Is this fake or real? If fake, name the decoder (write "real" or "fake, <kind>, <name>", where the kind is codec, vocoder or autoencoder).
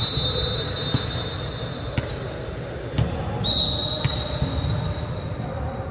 real